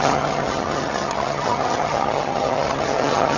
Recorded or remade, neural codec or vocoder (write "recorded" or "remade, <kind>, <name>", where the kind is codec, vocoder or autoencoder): remade, vocoder, HiFi-GAN